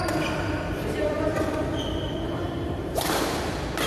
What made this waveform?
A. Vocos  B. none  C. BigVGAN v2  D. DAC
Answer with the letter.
C